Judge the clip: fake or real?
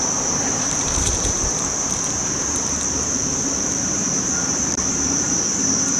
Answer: fake